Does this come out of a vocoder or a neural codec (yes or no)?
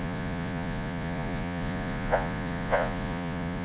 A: yes